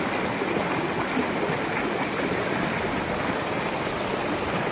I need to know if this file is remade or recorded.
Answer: recorded